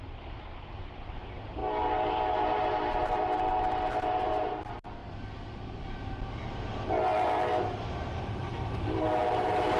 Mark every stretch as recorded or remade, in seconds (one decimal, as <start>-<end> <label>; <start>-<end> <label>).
0.0-5.0 remade; 5.0-7.6 recorded; 7.6-9.8 remade

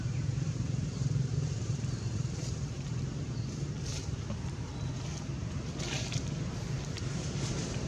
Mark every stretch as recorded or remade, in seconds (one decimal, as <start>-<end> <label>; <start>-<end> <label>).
0.0-4.7 remade; 4.7-6.9 recorded; 6.9-7.9 remade

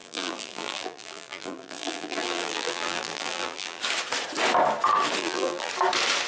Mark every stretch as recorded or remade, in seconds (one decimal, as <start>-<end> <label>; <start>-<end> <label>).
0.0-3.8 remade; 3.8-5.2 recorded; 5.2-5.7 remade; 5.7-6.3 recorded

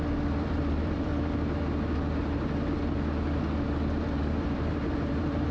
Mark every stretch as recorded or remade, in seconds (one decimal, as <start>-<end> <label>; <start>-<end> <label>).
0.0-1.1 remade; 1.1-4.4 recorded; 4.4-5.5 remade

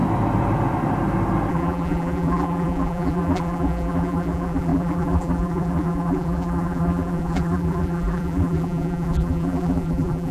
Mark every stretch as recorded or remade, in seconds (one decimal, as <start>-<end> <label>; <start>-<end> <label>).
0.0-1.5 recorded; 1.5-10.3 remade